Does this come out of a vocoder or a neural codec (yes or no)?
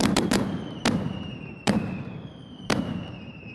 yes